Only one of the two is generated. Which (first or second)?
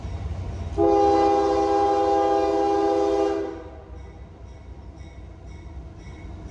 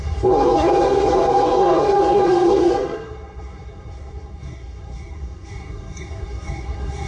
second